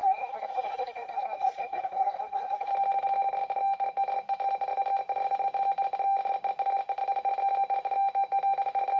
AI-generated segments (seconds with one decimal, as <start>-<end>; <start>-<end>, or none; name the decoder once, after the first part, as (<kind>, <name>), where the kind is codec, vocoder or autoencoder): 0.0-2.7 (codec, SNAC)